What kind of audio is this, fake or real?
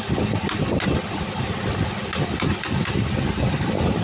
real